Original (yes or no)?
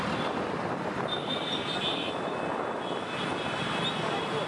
yes